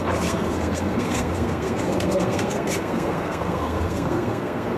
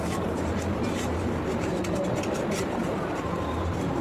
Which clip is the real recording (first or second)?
second